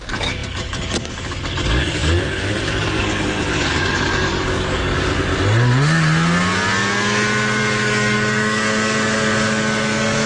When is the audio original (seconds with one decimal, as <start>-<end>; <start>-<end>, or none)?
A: 5.3-7.6